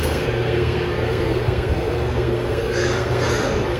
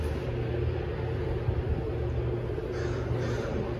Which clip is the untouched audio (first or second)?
second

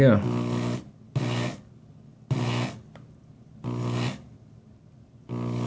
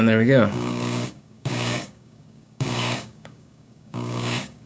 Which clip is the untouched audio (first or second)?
first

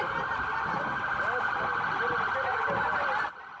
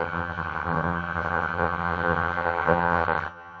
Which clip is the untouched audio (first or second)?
first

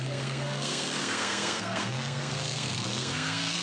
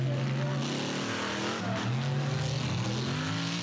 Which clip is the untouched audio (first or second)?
second